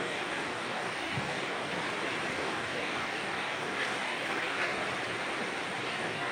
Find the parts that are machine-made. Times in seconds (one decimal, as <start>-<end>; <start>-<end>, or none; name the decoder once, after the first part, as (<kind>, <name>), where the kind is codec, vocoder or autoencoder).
0.0-1.7 (codec, DAC); 2.3-4.8; 5.8-6.3

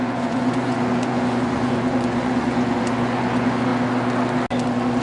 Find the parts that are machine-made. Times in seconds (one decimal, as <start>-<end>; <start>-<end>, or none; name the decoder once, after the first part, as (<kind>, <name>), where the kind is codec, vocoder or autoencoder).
0.0-3.7 (vocoder, Vocos)

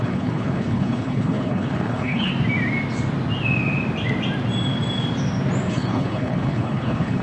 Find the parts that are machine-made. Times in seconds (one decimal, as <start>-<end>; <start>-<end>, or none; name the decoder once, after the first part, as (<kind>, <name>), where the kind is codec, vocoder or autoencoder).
0.0-2.3 (codec, HILCodec); 5.7-7.2